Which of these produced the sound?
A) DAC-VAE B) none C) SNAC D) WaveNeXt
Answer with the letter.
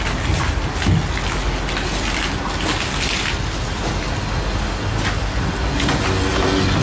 B